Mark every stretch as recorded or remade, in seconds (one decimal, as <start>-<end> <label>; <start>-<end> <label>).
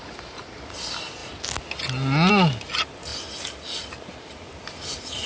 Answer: 0.0-5.3 recorded